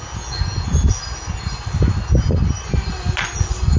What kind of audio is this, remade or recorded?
recorded